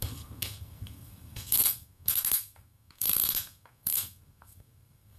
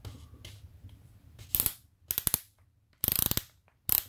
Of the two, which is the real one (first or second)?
second